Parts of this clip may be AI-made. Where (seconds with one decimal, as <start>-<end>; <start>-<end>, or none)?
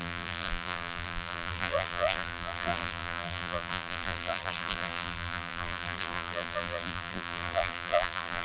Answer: 0.0-8.4